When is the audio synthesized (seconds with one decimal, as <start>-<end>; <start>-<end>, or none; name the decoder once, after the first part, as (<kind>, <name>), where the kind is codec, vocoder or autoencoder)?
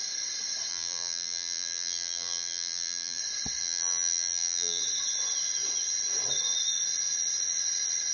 0.7-3.2 (vocoder, BigVGAN v2); 3.6-4.8